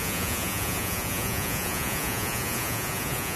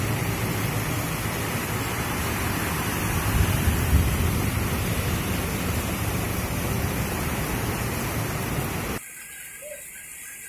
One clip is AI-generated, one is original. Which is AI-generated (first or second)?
first